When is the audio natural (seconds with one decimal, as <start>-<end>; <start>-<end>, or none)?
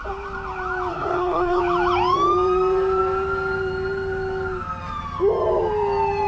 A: 0.0-0.9; 1.6-6.3